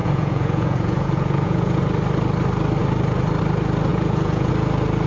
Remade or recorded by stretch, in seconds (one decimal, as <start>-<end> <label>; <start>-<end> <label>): 0.0-1.8 remade; 1.8-3.9 recorded; 3.9-4.5 remade; 4.5-5.1 recorded